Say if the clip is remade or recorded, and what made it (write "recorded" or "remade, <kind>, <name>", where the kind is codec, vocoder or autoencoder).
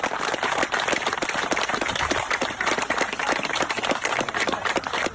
remade, vocoder, BigVGAN v2